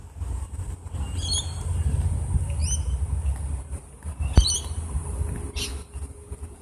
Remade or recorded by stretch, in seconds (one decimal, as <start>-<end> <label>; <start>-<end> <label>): 0.0-6.6 recorded